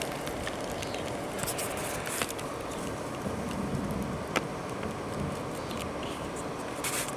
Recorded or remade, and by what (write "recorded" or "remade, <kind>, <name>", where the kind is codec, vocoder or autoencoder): recorded